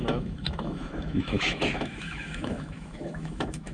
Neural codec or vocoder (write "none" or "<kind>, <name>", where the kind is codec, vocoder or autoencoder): autoencoder, DAC-VAE